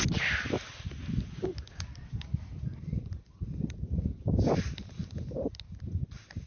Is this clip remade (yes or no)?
no